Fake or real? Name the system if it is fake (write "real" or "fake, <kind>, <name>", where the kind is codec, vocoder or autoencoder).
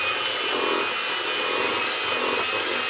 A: real